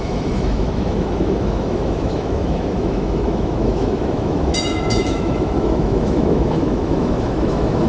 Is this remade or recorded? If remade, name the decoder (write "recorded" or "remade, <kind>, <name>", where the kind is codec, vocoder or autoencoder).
remade, autoencoder, DAC-VAE